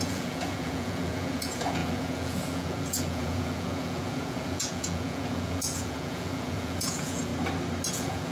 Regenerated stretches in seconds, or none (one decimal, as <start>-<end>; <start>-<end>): 0.0-7.3; 7.9-8.3